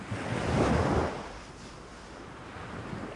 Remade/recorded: recorded